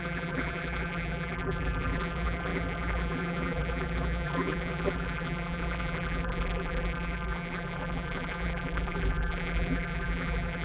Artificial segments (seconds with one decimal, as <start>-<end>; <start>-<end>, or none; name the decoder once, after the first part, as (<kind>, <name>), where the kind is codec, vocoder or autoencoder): 0.0-10.6 (vocoder, BigVGAN v2)